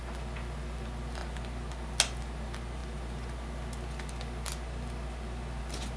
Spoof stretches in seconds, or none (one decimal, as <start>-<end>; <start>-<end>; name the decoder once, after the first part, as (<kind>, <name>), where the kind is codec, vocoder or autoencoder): none